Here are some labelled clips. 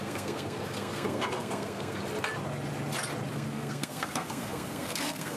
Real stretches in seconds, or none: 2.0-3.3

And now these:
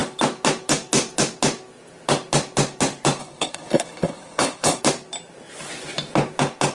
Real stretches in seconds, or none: 0.0-3.2; 4.8-6.7

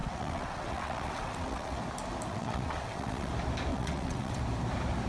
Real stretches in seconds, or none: 1.8-2.3; 3.3-3.7; 4.4-5.1